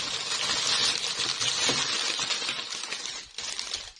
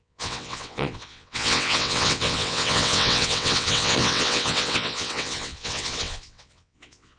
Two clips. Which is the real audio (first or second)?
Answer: first